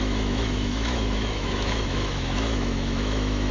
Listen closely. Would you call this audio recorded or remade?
remade